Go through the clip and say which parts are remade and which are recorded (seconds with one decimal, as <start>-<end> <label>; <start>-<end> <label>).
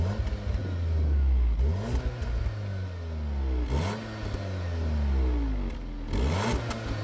0.0-7.0 recorded